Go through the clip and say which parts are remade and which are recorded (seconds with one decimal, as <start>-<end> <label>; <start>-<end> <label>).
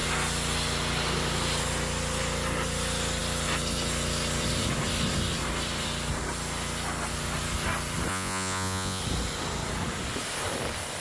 0.0-8.1 recorded; 8.1-9.0 remade; 9.0-11.0 recorded